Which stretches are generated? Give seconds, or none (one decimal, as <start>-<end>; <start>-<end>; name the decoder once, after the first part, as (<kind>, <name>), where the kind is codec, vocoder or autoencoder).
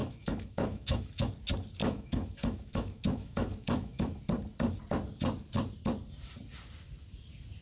0.0-1.3 (autoencoder, DAC-VAE); 1.8-4.2